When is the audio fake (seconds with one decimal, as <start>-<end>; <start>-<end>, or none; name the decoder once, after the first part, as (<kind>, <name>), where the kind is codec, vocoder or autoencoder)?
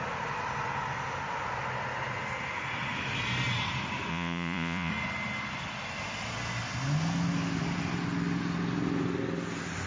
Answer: 4.1-4.9 (vocoder, Vocos)